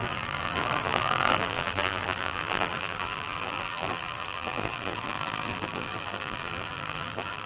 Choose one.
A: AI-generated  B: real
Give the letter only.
A